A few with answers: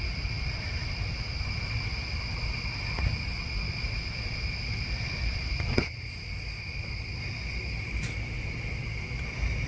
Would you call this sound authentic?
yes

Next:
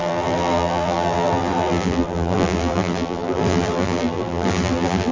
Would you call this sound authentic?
no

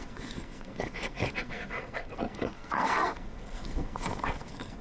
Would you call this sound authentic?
no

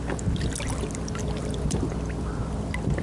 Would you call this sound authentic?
yes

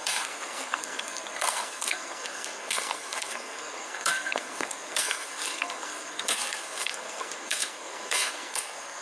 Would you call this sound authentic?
no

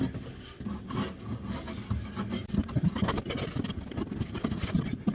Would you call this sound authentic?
yes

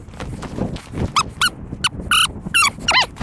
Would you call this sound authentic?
yes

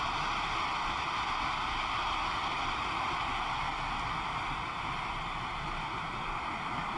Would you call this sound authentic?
yes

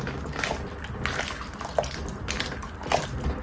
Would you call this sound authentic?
yes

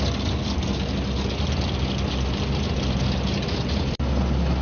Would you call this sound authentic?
yes